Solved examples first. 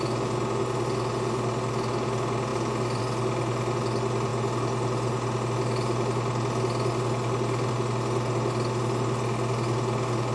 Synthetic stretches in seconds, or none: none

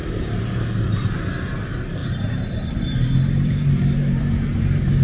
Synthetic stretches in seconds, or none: 0.0-1.2 (vocoder, BigVGAN v2); 2.0-5.0

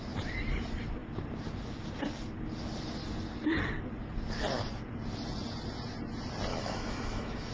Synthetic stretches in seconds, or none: 6.5-7.5 (autoencoder, DAC-VAE)

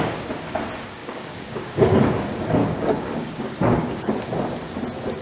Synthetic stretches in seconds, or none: 1.0-2.2 (codec, DAC); 2.6-4.1

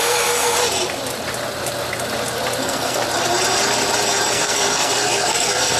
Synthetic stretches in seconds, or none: 0.0-0.6 (codec, SNAC); 2.6-3.0; 4.3-5.8

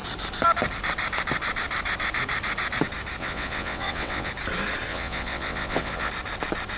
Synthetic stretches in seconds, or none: 3.2-4.3 (vocoder, WaveNeXt); 4.9-6.1

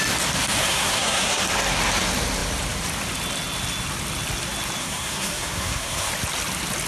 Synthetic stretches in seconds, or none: 0.6-1.4 (codec, SNAC); 4.8-6.1

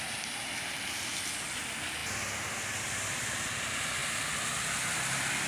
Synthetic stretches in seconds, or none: none